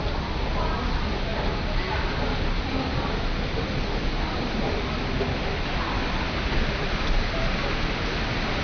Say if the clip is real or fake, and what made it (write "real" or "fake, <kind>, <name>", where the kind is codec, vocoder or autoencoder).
real